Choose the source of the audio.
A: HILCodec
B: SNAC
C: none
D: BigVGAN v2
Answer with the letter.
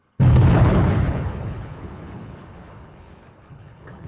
A